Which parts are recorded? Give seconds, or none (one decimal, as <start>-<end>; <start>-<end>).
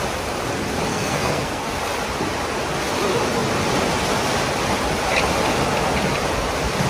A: 0.0-0.9; 1.8-6.9